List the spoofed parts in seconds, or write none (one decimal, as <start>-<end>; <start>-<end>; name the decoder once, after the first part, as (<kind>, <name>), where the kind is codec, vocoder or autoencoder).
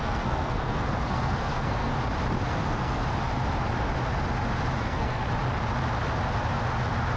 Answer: 0.0-1.9 (codec, SNAC); 2.5-3.0; 4.8-5.2